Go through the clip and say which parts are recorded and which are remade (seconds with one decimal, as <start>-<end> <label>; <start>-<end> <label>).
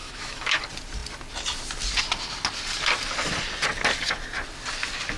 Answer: 0.0-0.6 remade; 0.6-5.2 recorded